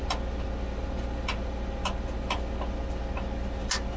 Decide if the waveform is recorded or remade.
recorded